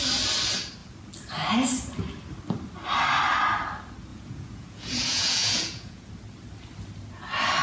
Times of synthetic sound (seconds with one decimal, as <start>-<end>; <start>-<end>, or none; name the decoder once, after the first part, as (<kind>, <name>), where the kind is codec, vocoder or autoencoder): 4.1-6.1 (vocoder, Vocos)